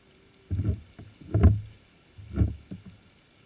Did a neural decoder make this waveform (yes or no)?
no